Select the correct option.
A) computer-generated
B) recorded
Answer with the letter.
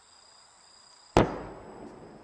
B